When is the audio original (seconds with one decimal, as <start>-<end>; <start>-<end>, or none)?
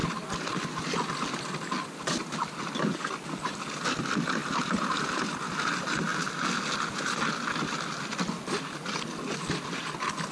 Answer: 0.0-10.3